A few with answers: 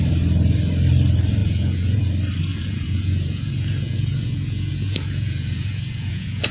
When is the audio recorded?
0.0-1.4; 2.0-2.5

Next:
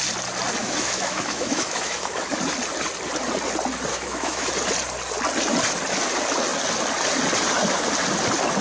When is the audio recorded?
0.0-0.6; 2.3-3.9; 4.5-8.6

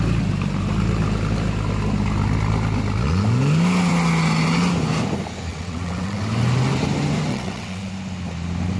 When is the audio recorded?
0.0-5.5; 6.2-7.3; 7.9-8.8

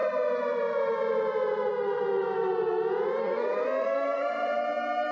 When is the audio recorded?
0.0-3.2; 4.3-5.1

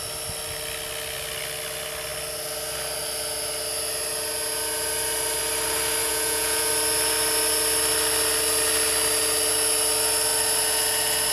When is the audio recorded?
0.0-6.0; 6.7-11.3

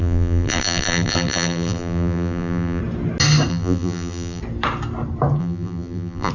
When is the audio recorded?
2.8-3.5; 4.4-5.4